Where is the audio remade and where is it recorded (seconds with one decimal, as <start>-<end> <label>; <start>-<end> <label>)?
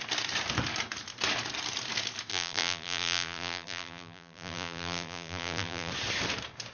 0.0-2.3 recorded; 2.3-5.9 remade; 5.9-6.7 recorded